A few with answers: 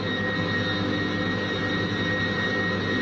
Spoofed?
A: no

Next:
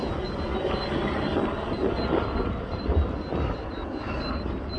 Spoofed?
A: no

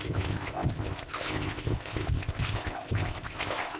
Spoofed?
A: yes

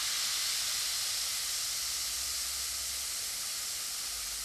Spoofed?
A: no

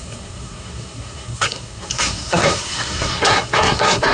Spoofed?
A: yes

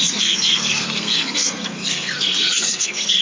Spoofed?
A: yes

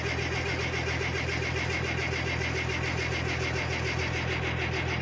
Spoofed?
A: no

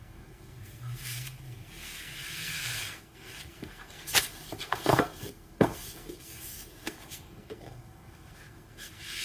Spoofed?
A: yes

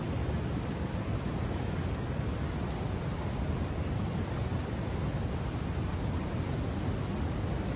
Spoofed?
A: no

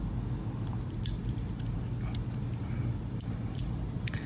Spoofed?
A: no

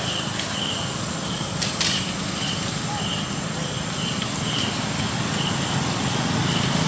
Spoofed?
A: no